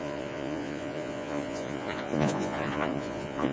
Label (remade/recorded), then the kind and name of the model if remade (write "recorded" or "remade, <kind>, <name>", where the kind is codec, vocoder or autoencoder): remade, vocoder, Vocos